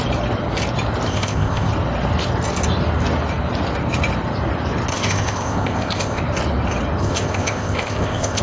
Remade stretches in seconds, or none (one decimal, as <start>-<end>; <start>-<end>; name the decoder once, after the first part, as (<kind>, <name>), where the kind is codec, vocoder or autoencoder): 1.1-1.7 (codec, ZipCodec); 4.9-6.2; 7.0-8.4